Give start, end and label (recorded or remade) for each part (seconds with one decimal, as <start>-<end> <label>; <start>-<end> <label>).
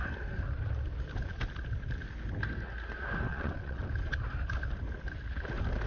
0.0-3.3 recorded; 3.3-3.8 remade; 3.8-5.9 recorded